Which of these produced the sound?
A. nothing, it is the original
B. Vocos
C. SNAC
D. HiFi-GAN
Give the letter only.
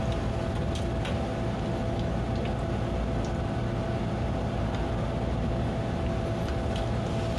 A